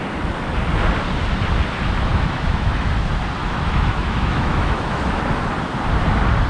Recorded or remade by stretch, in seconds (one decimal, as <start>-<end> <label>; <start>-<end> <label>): 0.0-2.1 recorded; 2.1-2.9 remade; 2.9-3.4 recorded; 3.4-5.2 remade; 5.2-6.5 recorded